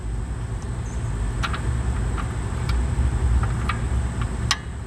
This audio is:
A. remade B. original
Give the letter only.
B